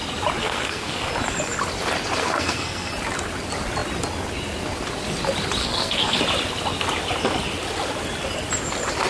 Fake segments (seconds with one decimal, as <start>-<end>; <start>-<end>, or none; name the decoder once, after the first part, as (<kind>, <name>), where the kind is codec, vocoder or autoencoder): 0.4-1.1 (codec, SNAC); 2.2-2.9; 5.6-6.2